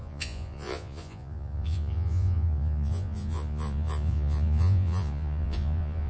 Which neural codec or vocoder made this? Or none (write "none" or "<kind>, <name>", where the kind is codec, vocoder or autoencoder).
vocoder, Vocos